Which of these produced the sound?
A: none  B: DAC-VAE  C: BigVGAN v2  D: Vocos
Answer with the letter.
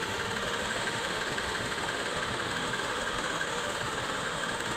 B